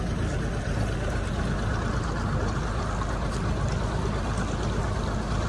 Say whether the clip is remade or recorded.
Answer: recorded